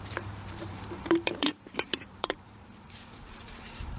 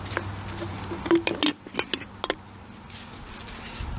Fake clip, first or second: first